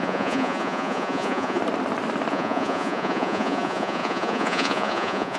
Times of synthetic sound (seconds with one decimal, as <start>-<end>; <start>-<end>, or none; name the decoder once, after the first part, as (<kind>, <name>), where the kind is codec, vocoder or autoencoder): 0.0-1.6 (vocoder, Vocos); 2.3-5.4